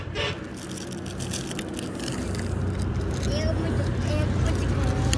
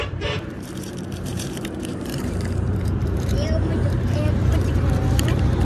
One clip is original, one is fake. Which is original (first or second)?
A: first